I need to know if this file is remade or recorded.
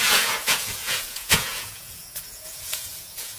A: remade